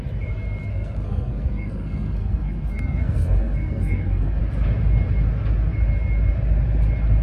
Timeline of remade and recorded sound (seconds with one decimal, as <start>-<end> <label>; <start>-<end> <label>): 0.0-0.7 recorded; 0.7-4.4 remade; 4.4-7.2 recorded